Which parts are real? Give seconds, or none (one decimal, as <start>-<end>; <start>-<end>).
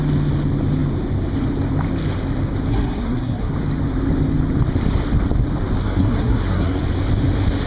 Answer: 0.0-2.7; 3.5-5.8; 6.8-7.7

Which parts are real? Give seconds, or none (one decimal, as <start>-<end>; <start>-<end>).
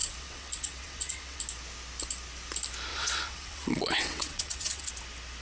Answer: 1.4-2.9; 4.9-5.4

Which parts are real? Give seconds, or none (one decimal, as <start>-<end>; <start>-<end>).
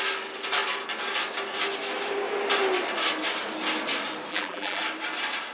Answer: 0.0-4.3; 4.8-5.5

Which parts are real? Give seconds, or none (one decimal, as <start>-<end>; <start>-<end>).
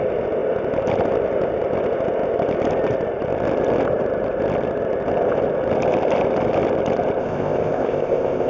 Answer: 0.0-7.2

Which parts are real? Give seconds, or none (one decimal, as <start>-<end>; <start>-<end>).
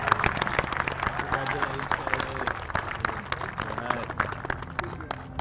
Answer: 0.0-1.5; 3.0-5.4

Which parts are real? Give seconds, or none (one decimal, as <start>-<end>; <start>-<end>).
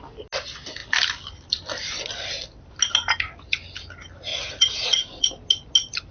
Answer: 0.0-4.3; 5.3-6.1